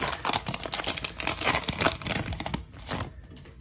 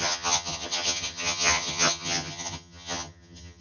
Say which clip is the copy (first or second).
second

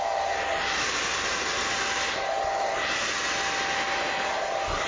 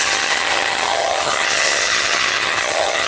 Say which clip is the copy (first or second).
second